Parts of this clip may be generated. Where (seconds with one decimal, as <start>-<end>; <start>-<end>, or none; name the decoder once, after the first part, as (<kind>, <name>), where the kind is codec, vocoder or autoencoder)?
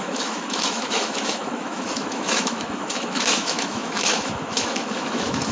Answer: 0.0-5.5 (autoencoder, DAC-VAE)